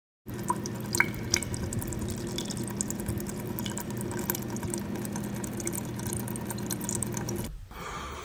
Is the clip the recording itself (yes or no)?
yes